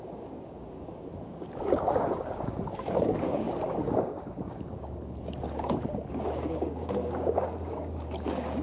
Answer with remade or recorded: remade